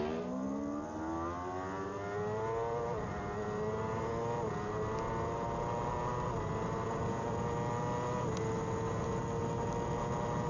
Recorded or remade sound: recorded